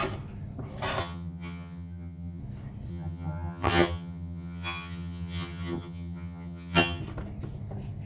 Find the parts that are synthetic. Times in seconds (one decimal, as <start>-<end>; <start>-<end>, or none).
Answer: 1.0-2.4; 2.9-7.0